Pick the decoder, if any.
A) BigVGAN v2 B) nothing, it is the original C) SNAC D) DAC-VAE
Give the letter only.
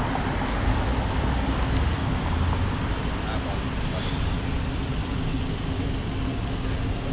B